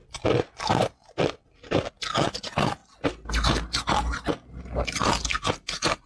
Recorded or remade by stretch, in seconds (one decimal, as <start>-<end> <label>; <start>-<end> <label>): 0.0-6.1 recorded